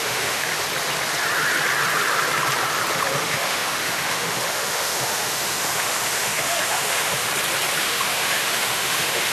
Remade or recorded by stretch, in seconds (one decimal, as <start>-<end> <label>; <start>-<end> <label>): 0.0-0.5 remade; 0.5-3.2 recorded; 3.2-7.3 remade; 7.3-7.8 recorded; 7.8-9.3 remade